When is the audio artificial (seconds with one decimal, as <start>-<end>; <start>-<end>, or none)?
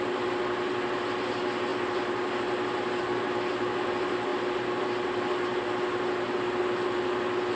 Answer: none